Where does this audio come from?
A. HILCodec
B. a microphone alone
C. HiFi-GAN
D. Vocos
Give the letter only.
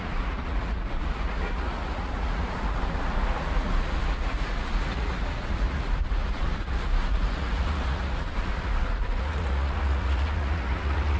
D